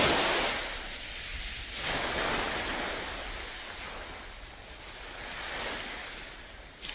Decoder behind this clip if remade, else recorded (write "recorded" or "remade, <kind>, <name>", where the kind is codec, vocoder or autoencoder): recorded